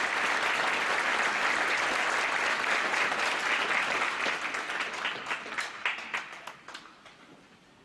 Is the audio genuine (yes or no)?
yes